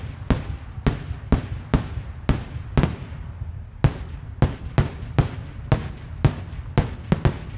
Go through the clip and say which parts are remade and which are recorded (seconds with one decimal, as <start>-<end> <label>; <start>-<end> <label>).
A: 0.0-7.6 recorded